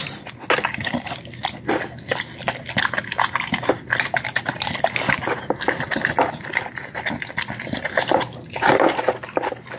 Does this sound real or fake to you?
real